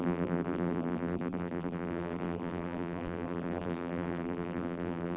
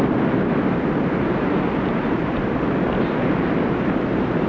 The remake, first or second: first